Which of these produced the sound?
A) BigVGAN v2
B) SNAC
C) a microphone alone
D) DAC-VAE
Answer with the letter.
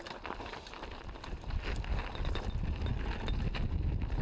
C